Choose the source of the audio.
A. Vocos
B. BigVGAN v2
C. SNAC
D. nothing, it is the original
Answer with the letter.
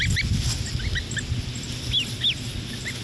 D